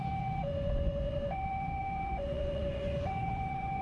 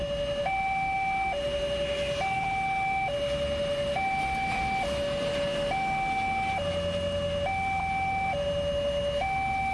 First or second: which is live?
second